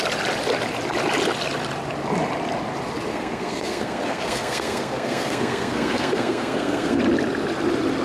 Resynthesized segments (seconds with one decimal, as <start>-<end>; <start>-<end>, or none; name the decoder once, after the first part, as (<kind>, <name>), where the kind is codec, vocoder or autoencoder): 3.1-7.0 (codec, SNAC)